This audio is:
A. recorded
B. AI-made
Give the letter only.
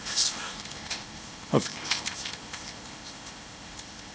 B